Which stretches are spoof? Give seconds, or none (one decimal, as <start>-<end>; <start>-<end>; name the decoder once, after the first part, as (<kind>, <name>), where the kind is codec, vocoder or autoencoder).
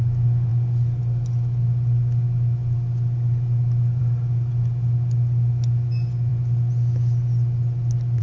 none